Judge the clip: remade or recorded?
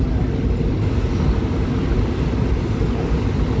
recorded